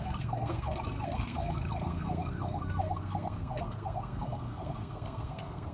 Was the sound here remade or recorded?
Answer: remade